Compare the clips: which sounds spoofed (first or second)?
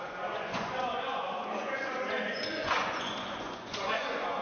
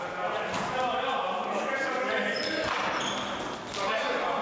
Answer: first